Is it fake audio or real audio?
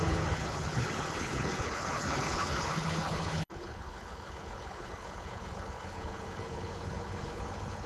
fake